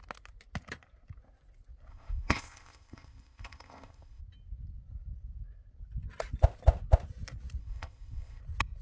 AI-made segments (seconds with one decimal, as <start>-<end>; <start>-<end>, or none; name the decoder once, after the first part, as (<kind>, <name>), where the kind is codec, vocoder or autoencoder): 1.9-4.2 (codec, ZipCodec); 7.6-8.4